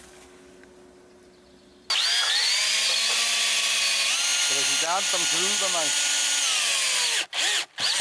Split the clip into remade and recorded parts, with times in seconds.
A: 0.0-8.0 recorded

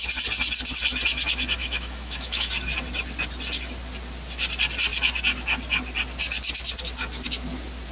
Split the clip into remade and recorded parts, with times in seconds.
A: 0.0-1.6 recorded; 1.6-2.5 remade; 2.5-7.9 recorded

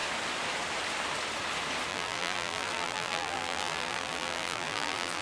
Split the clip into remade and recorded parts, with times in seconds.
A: 0.0-1.9 recorded; 1.9-5.2 remade